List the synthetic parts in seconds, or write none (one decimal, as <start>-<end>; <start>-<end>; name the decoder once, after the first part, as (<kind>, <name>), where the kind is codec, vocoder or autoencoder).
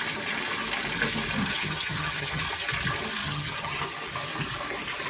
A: 1.4-2.4 (vocoder, HiFi-GAN); 3.2-3.8